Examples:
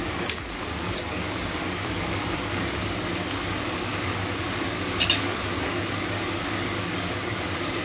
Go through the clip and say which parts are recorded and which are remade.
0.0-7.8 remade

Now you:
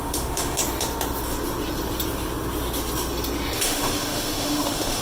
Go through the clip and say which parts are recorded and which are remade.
0.0-0.6 remade; 0.6-3.6 recorded; 3.6-5.0 remade

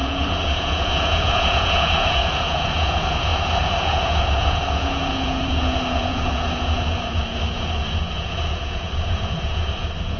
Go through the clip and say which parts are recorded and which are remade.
0.0-10.2 remade

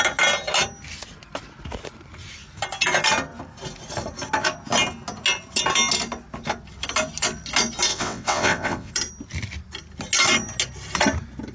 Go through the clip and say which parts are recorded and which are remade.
0.0-7.9 recorded; 7.9-8.9 remade; 8.9-11.5 recorded

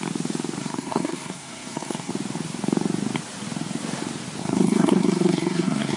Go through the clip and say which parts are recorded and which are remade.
0.0-0.6 recorded; 0.6-2.1 remade; 2.1-4.4 recorded; 4.4-6.0 remade

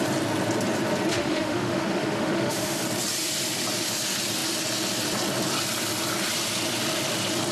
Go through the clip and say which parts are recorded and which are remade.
0.0-1.1 recorded; 1.1-2.8 remade; 2.8-7.5 recorded

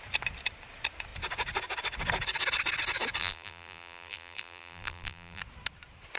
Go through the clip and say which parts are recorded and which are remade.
0.0-3.2 recorded; 3.2-5.4 remade; 5.4-6.2 recorded